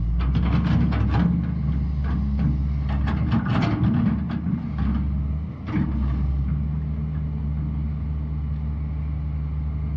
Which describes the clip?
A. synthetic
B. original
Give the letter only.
B